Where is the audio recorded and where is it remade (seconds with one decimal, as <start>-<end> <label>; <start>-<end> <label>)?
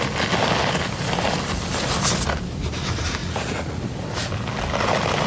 0.0-3.2 recorded; 3.2-3.8 remade; 3.8-5.3 recorded